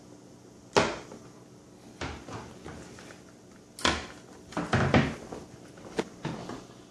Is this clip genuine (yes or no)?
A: yes